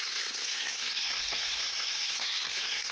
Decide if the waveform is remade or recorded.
remade